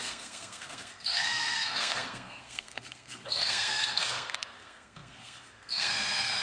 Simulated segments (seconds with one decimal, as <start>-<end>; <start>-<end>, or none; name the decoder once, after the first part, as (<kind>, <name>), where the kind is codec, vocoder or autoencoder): 0.0-6.4 (codec, SNAC)